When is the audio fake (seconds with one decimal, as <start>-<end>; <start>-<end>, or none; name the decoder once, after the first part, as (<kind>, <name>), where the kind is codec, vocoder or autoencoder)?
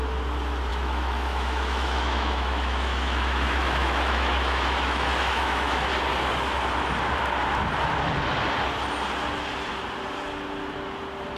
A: 0.7-5.9 (autoencoder, DAC-VAE)